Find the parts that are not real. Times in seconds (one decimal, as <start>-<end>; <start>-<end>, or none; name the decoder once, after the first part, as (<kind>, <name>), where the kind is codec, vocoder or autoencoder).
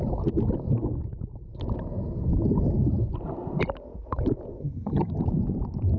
4.6-5.2 (vocoder, HiFi-GAN)